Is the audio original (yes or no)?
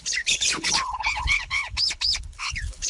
no